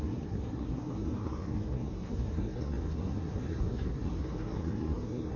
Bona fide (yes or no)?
no